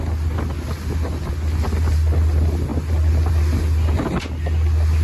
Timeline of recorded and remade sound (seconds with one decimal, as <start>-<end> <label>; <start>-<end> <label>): 0.0-5.0 recorded